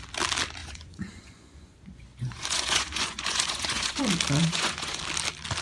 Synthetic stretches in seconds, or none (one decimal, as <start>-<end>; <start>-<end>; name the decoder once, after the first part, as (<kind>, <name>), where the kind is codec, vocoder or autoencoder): 0.6-4.0 (vocoder, Vocos); 4.4-5.0

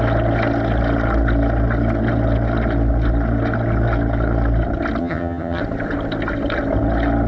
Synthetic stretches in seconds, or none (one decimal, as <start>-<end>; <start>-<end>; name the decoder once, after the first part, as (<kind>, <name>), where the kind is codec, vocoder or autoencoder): 5.0-5.6 (vocoder, HiFi-GAN)

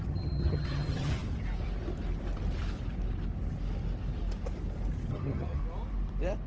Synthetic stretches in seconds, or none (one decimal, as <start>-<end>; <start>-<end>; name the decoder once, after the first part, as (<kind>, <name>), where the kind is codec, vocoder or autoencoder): 0.0-1.2 (vocoder, HiFi-GAN); 5.1-5.6

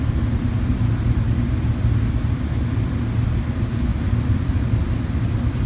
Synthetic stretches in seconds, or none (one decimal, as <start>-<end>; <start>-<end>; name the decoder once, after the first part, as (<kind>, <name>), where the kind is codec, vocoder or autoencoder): none

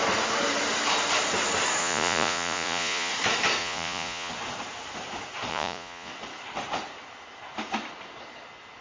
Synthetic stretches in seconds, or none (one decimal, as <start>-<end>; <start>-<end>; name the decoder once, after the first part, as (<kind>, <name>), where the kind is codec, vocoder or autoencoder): 1.8-3.1 (vocoder, Vocos); 3.6-4.3; 5.5-6.1

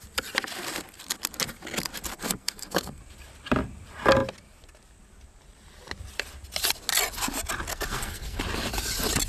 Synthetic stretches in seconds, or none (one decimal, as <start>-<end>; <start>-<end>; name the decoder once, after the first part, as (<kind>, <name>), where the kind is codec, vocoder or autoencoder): 2.1-3.0 (codec, SNAC); 7.7-8.4

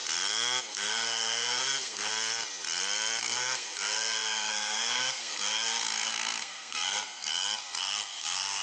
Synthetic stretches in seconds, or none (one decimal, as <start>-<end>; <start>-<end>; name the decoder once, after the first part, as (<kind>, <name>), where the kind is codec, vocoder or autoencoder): 0.6-2.1 (codec, SNAC); 3.2-7.3; 7.8-8.6